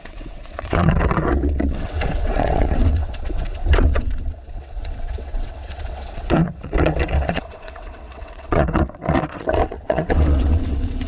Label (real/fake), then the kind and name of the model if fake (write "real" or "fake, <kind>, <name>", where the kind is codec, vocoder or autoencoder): fake, vocoder, WaveNeXt